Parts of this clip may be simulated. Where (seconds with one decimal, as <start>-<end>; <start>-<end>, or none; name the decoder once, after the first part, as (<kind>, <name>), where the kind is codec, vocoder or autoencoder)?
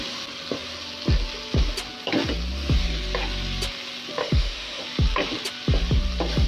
4.2-4.8 (autoencoder, DAC-VAE)